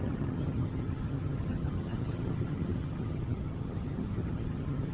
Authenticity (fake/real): fake